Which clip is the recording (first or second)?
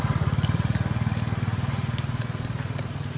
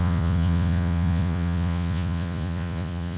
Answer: first